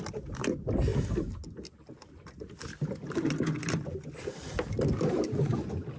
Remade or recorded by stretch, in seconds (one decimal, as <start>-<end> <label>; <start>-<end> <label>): 0.0-6.0 recorded